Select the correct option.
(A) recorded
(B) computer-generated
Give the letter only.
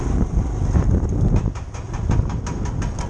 A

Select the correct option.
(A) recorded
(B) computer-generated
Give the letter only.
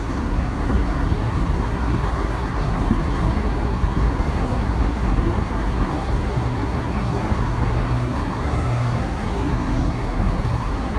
B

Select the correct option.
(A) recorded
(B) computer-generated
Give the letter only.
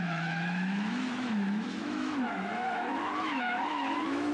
B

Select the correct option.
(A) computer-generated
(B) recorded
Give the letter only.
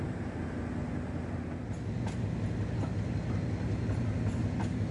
B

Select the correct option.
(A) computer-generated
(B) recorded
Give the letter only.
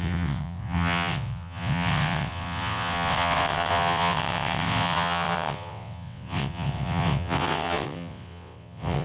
A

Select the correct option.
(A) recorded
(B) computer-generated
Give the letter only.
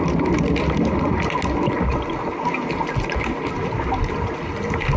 A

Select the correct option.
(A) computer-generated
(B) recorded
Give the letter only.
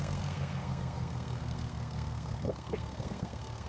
A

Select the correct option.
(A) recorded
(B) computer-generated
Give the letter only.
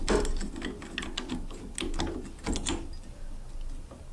A